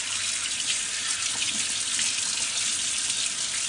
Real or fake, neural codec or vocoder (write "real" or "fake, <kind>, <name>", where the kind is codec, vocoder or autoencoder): real